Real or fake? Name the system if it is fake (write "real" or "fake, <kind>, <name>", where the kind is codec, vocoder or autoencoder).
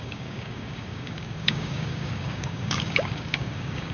fake, codec, DAC